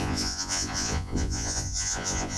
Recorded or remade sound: remade